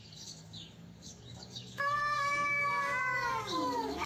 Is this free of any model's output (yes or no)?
no